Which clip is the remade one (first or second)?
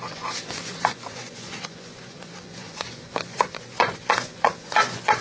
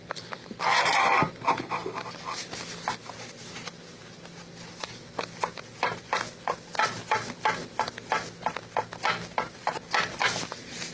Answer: first